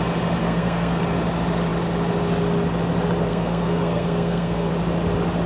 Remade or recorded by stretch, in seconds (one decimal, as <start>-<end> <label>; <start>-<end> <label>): 0.0-0.4 recorded; 0.4-1.0 remade; 1.0-3.3 recorded; 3.3-4.7 remade; 4.7-5.5 recorded